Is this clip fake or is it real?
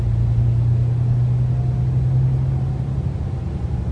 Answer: real